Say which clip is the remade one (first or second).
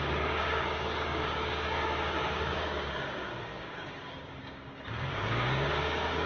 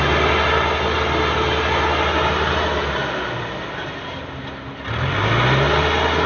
first